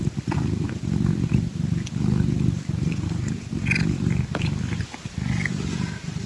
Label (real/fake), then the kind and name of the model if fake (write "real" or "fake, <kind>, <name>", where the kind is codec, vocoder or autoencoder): real